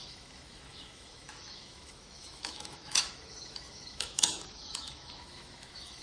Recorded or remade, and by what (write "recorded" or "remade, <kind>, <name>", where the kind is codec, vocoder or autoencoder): remade, autoencoder, DAC-VAE